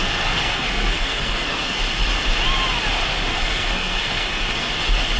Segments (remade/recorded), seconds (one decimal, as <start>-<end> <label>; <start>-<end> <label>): 0.0-1.8 remade; 1.8-3.3 recorded; 3.3-4.7 remade; 4.7-5.2 recorded